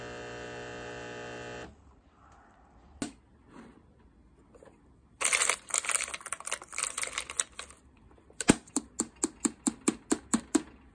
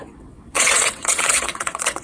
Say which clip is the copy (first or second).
second